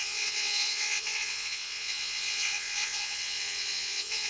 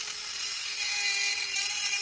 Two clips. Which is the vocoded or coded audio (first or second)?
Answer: first